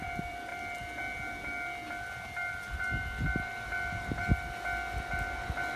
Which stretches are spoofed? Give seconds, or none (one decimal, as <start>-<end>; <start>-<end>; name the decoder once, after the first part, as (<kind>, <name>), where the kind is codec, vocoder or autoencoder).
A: 0.0-0.5 (vocoder, BigVGAN v2); 2.5-4.2